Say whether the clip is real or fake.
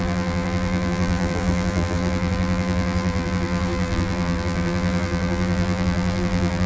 fake